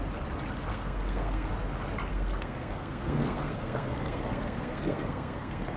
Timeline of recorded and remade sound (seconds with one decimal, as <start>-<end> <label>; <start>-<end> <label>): 0.0-0.7 recorded; 0.7-1.5 remade; 1.5-2.1 recorded; 2.1-5.8 remade